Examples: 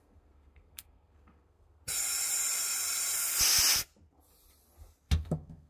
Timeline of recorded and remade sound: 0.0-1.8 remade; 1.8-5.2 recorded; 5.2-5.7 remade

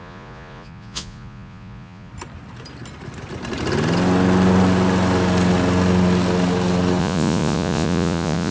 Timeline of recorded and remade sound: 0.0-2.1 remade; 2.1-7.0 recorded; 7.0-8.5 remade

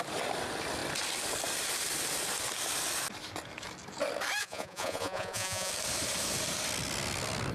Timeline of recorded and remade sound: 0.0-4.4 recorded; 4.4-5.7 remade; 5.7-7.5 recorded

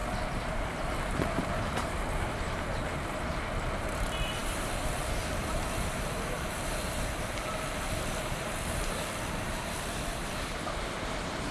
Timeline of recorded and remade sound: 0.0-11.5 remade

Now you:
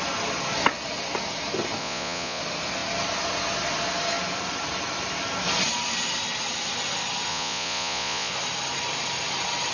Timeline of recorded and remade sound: 0.0-1.8 recorded; 1.8-2.4 remade; 2.4-7.3 recorded; 7.3-8.3 remade; 8.3-9.7 recorded